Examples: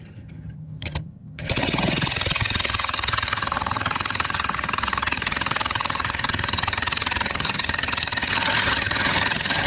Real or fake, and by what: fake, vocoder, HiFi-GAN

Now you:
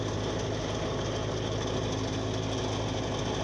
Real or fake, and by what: real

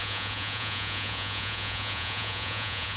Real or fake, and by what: fake, vocoder, Vocos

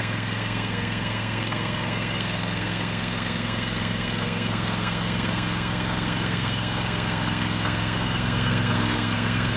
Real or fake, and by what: fake, codec, SNAC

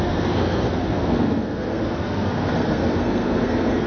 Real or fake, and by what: fake, codec, SNAC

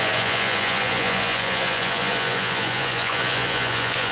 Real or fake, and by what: fake, vocoder, Vocos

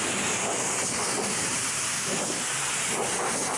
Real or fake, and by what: real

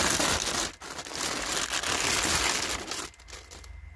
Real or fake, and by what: real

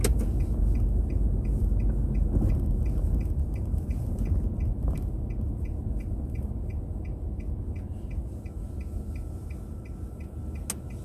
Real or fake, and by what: real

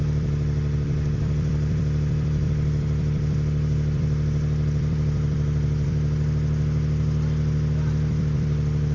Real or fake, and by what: fake, vocoder, BigVGAN v2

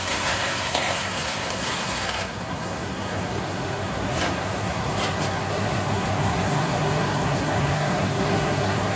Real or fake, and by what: fake, codec, SNAC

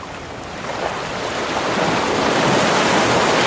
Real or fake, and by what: real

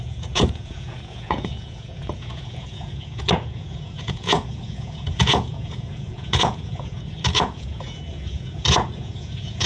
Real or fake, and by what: fake, vocoder, Vocos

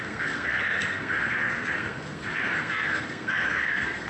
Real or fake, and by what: fake, codec, SNAC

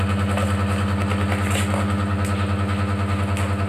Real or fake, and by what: real